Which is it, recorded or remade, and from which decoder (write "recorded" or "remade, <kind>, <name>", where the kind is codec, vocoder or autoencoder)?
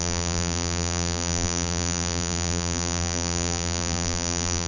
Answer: remade, vocoder, BigVGAN v2